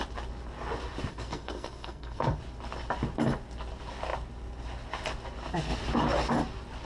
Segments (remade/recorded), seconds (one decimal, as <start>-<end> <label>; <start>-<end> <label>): 0.0-1.1 recorded; 1.1-2.4 remade; 2.4-6.8 recorded